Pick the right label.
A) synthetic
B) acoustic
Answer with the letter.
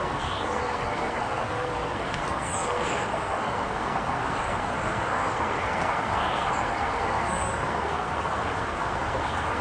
A